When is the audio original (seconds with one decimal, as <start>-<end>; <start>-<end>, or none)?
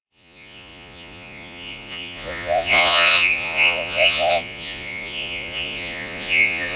none